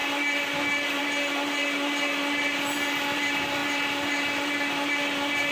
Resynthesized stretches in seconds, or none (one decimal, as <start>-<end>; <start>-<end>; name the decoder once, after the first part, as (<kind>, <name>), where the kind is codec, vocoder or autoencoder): none